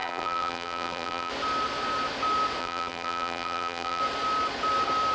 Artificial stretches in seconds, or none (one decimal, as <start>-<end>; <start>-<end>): 0.0-1.3; 2.6-4.0